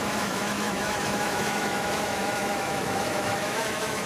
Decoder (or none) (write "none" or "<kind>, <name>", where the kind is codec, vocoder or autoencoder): autoencoder, DAC-VAE